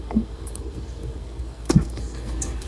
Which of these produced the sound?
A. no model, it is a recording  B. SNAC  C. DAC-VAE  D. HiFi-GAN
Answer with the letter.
B